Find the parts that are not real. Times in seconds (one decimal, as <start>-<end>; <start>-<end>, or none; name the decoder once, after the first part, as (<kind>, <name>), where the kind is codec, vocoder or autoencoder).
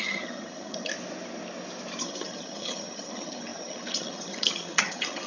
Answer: 0.0-0.9 (vocoder, HiFi-GAN); 2.0-5.3